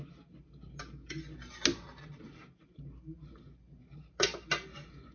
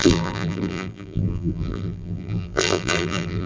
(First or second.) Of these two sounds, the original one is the first